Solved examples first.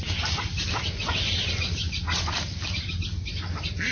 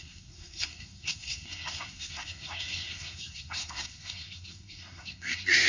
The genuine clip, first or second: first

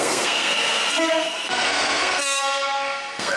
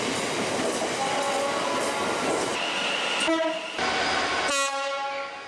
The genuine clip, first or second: second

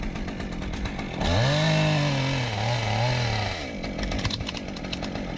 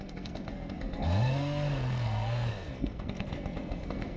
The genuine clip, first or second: first